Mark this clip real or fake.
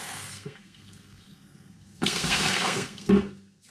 fake